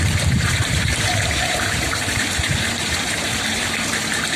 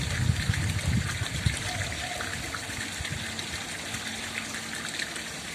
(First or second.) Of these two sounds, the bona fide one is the second